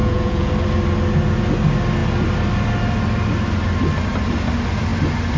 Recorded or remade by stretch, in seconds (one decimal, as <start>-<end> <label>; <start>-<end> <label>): 0.0-0.5 remade; 0.5-5.4 recorded